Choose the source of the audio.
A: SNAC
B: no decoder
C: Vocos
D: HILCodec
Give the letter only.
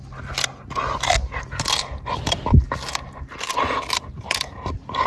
B